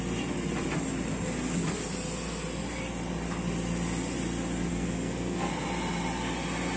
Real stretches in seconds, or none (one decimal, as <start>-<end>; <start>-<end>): 0.0-4.7; 5.5-6.8